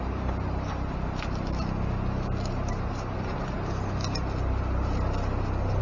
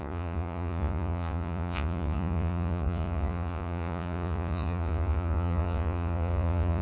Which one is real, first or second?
first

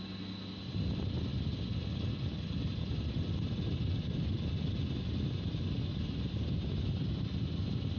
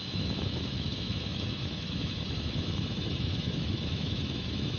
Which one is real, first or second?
first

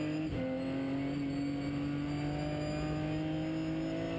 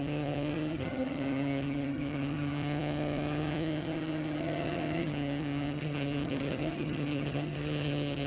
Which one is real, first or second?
first